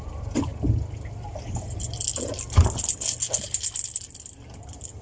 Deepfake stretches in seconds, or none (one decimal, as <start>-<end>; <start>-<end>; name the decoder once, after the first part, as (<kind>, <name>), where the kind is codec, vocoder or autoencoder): none